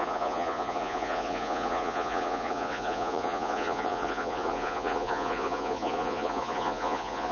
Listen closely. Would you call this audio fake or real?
fake